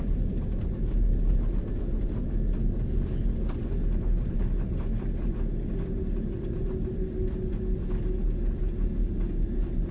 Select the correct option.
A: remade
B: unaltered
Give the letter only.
B